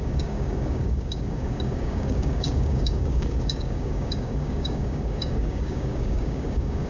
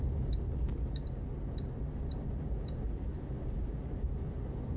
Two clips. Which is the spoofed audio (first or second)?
first